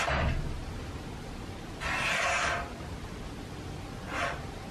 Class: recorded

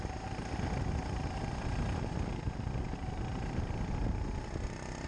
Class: recorded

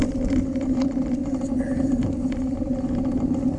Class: recorded